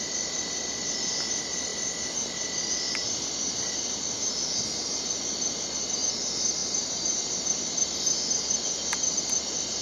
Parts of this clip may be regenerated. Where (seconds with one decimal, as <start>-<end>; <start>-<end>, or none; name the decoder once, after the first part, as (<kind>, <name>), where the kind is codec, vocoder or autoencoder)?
6.6-7.3 (vocoder, BigVGAN v2)